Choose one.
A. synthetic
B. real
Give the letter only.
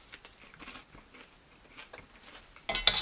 B